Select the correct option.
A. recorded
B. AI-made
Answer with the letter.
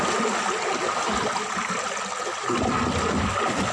A